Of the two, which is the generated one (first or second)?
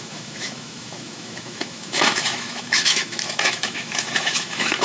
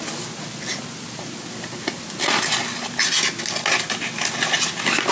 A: first